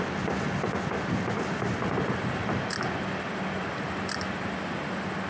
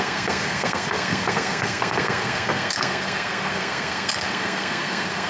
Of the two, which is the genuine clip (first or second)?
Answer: first